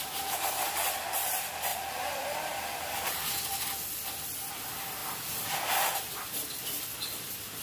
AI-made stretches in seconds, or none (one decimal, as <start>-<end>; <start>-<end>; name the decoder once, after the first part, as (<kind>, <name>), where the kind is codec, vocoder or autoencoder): 1.7-3.3 (vocoder, BigVGAN v2); 5.0-6.2